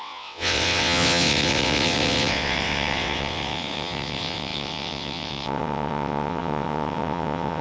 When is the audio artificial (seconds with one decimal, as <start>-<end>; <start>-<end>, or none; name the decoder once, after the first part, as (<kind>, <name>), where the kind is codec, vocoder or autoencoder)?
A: 0.0-7.6 (vocoder, WaveNeXt)